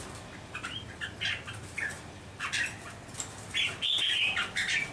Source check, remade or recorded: recorded